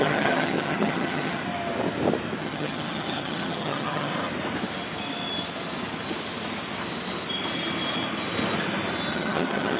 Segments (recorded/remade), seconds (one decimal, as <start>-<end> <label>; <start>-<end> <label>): 0.0-1.4 remade; 1.4-2.4 recorded; 2.4-4.1 remade; 4.1-9.1 recorded; 9.1-9.8 remade